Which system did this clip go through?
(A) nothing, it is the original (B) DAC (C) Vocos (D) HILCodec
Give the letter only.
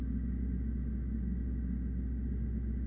A